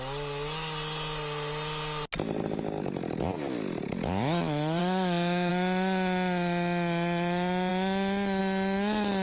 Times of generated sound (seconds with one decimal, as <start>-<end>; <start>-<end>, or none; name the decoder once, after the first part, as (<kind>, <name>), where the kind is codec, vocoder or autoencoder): 4.8-5.5 (autoencoder, DAC-VAE)